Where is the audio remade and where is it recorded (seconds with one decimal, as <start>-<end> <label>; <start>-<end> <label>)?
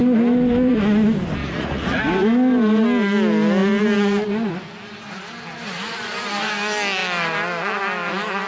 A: 0.0-1.4 recorded; 1.4-2.0 remade; 2.0-8.5 recorded